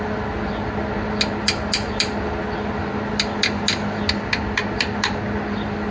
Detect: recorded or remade recorded